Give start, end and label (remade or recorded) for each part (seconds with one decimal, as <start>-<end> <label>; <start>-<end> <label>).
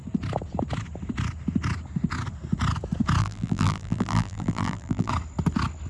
0.0-3.2 recorded; 3.2-5.1 remade; 5.1-5.9 recorded